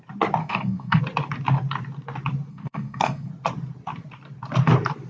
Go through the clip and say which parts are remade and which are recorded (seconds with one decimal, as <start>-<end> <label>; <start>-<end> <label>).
0.0-0.4 recorded; 0.4-1.0 remade; 1.0-2.5 recorded; 2.5-3.3 remade; 3.3-5.1 recorded